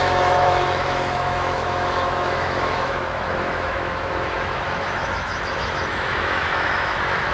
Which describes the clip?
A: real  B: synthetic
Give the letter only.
B